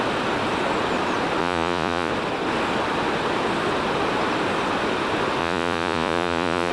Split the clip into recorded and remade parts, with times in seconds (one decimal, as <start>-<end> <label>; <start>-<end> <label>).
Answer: 0.0-1.4 recorded; 1.4-2.1 remade; 2.1-5.4 recorded; 5.4-6.7 remade